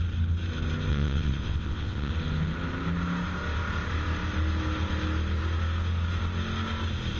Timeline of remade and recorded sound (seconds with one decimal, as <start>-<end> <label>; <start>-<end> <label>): 0.0-0.9 recorded; 0.9-2.1 remade; 2.1-7.2 recorded